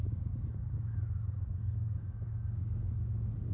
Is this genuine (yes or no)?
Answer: no